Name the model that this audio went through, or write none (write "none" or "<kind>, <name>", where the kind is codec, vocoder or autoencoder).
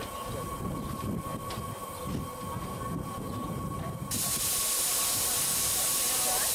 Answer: none